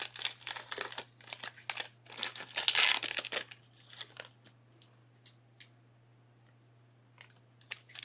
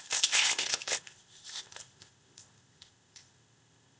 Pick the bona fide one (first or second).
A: first